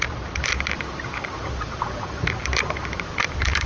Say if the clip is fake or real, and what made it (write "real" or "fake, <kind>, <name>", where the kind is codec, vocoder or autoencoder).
fake, vocoder, BigVGAN v2